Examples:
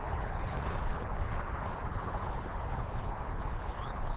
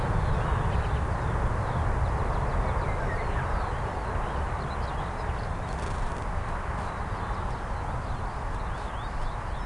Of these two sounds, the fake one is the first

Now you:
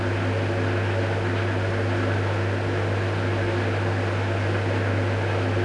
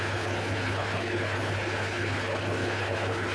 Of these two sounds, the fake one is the second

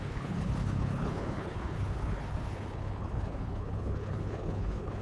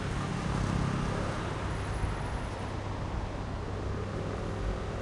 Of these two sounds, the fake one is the first